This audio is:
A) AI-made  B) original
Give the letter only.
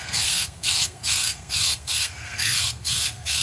A